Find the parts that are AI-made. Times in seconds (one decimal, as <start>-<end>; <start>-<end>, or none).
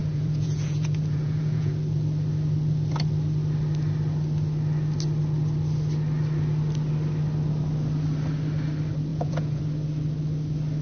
0.0-1.7; 9.1-9.6